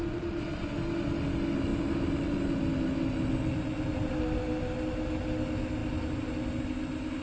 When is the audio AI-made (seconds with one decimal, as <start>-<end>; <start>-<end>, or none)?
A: none